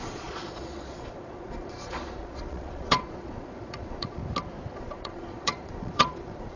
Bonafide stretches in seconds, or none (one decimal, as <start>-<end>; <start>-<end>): 4.2-4.7